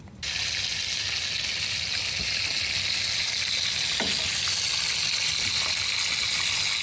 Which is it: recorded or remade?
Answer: recorded